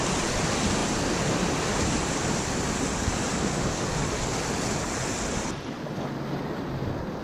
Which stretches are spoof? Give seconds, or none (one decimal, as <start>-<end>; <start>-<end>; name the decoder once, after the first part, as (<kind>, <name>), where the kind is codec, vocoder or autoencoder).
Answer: 3.3-4.3 (codec, DAC)